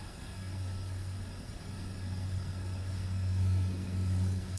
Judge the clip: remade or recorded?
remade